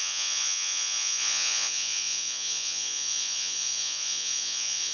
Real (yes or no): no